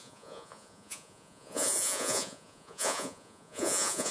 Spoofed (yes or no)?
yes